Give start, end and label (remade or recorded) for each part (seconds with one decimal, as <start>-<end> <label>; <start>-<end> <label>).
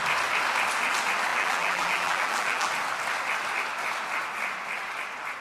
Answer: 0.0-1.3 recorded; 1.3-2.7 remade; 2.7-5.4 recorded